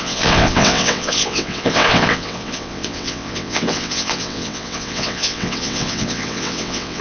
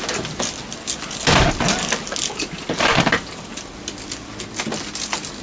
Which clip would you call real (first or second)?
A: second